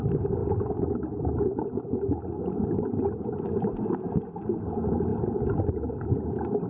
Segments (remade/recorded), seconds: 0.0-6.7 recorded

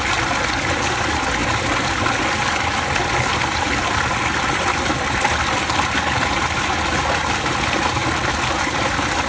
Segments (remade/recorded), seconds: 0.0-9.3 recorded